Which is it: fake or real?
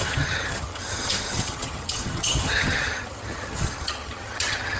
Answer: fake